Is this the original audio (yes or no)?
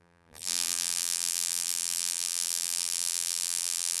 no